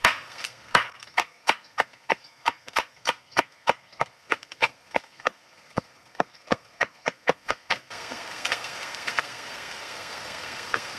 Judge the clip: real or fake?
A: fake